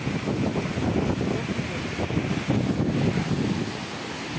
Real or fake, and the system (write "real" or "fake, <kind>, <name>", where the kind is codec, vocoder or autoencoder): real